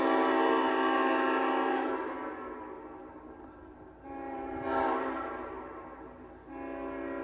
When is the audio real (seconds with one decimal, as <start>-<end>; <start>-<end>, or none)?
0.0-3.0; 5.6-7.2